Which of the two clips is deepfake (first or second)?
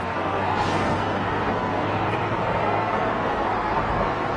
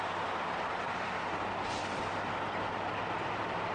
first